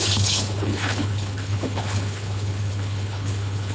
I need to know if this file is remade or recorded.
remade